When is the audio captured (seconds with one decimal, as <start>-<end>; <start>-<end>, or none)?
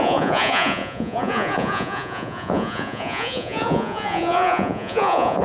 none